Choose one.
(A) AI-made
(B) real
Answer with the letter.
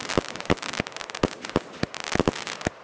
B